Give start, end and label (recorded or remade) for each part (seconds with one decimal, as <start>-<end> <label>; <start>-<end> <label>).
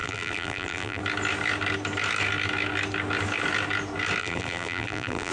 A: 0.0-1.0 remade; 1.0-4.2 recorded; 4.2-5.3 remade